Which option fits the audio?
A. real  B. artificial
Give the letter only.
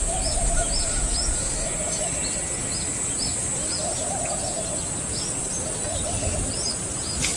A